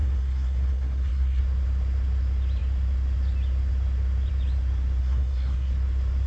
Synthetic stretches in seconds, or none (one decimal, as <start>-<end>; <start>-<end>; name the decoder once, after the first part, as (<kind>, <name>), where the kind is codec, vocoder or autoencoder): 0.0-1.4 (codec, SNAC); 5.0-5.7